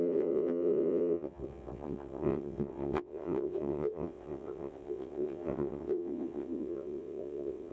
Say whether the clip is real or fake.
fake